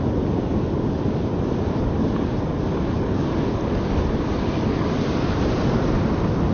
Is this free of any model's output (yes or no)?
yes